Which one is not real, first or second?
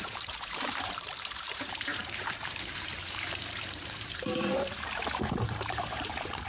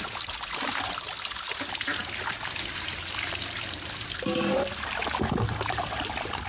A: first